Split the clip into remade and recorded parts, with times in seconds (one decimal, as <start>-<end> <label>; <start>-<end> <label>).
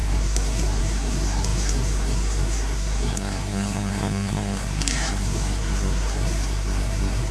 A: 0.0-7.3 remade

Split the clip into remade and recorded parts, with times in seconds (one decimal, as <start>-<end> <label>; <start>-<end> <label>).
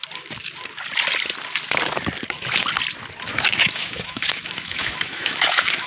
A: 0.0-3.3 recorded; 3.3-5.9 remade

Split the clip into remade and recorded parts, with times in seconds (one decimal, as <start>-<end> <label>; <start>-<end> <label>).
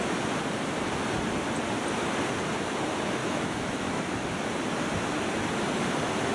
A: 0.0-3.2 recorded; 3.2-4.1 remade; 4.1-6.3 recorded